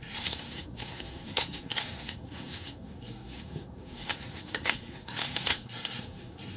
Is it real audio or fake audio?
fake